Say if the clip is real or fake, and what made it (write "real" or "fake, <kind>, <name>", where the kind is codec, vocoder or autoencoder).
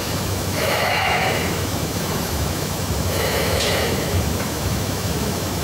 fake, autoencoder, DAC-VAE